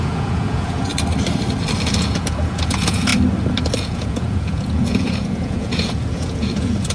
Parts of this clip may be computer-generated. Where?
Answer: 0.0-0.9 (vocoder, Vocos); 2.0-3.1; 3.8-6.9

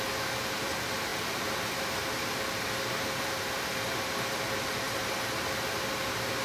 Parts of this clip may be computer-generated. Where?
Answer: none

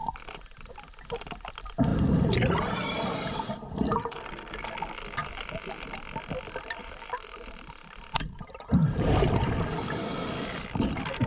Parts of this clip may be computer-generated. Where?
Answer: 0.0-0.7 (vocoder, BigVGAN v2); 5.2-5.9; 6.8-9.2